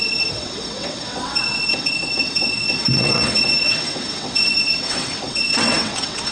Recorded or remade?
remade